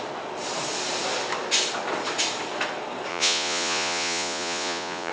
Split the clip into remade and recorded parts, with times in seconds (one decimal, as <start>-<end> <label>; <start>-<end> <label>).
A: 0.0-3.1 recorded; 3.1-5.1 remade